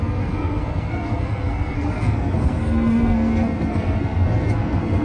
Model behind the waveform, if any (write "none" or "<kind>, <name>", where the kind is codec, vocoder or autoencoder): codec, SNAC